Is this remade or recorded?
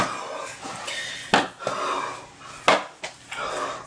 recorded